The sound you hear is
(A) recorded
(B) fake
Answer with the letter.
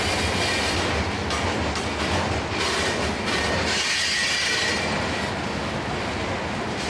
A